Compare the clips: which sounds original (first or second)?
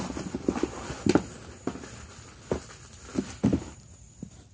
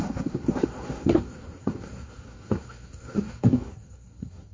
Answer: first